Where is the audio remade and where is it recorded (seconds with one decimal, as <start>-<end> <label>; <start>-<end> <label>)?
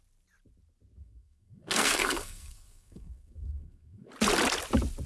0.0-1.0 recorded; 1.0-4.1 remade; 4.1-5.1 recorded